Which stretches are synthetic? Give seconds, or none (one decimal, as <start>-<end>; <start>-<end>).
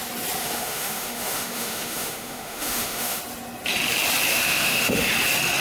0.4-3.2; 4.3-5.1